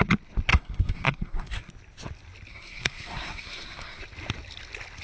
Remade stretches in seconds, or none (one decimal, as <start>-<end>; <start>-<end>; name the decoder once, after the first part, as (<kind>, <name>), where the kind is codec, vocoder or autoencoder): 0.5-1.7 (codec, SNAC); 2.5-4.0